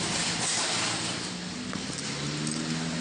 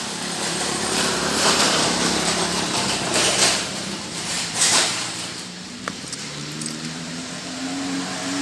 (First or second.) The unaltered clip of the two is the first